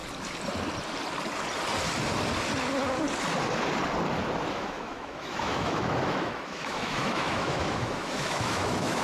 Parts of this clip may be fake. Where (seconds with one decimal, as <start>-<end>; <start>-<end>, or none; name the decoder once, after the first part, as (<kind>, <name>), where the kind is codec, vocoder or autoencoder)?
4.5-9.0 (autoencoder, DAC-VAE)

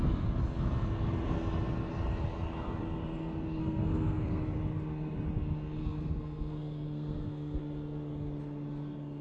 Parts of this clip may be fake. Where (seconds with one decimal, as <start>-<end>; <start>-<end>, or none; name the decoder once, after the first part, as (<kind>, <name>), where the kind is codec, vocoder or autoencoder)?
3.6-4.4 (codec, SNAC); 5.8-7.6

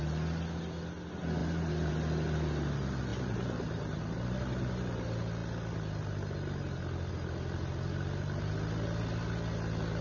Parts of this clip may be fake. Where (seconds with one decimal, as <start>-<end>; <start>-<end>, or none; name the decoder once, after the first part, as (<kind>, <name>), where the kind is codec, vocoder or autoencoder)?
1.4-1.9 (vocoder, BigVGAN v2); 3.1-4.0

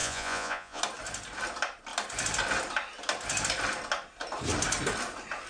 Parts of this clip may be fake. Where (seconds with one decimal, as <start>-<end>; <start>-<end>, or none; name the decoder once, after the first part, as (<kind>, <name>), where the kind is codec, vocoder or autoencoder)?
0.0-0.8 (vocoder, Vocos)

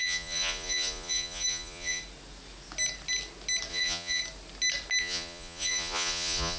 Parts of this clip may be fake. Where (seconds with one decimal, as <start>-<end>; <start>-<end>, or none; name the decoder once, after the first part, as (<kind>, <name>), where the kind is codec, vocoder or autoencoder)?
0.0-2.0 (vocoder, Vocos); 3.7-4.2; 5.0-6.6